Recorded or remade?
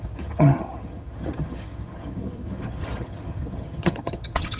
remade